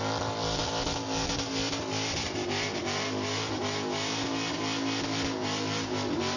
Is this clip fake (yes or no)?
no